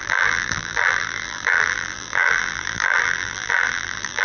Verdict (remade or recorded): remade